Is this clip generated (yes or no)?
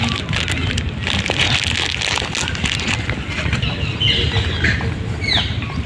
no